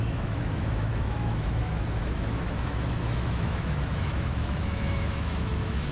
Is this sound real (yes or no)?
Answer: no